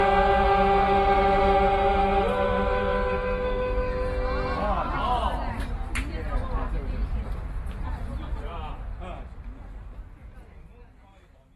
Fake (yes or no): no